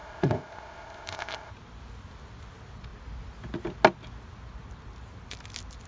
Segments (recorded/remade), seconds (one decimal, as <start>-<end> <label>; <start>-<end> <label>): 0.0-1.5 remade; 1.5-5.9 recorded